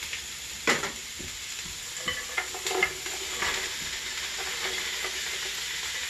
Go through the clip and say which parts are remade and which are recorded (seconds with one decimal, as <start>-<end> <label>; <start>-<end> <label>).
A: 0.0-6.1 recorded